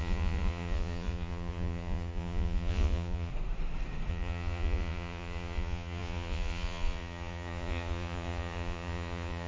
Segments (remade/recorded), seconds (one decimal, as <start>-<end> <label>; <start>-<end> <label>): 0.0-3.3 remade; 3.3-4.1 recorded; 4.1-9.5 remade